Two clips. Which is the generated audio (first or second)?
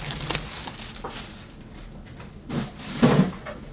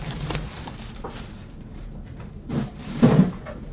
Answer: second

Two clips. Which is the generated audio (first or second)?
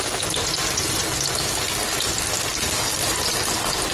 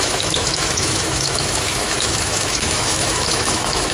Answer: second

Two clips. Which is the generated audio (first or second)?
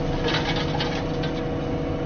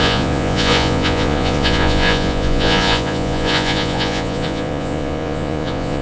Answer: second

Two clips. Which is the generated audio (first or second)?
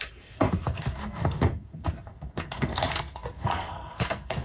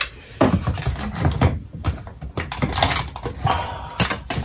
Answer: first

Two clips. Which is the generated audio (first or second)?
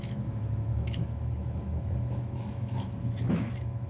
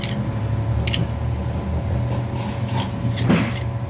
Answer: first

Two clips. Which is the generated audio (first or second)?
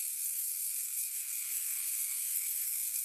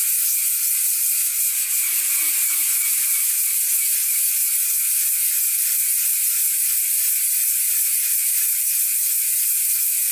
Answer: first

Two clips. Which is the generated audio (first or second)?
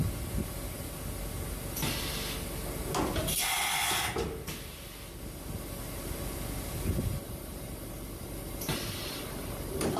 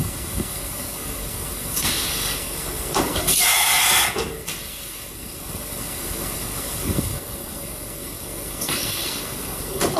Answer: second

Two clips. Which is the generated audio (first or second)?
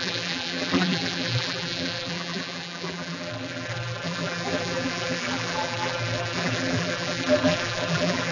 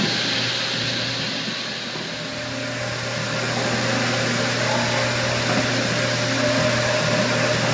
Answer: first